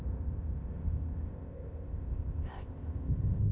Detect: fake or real fake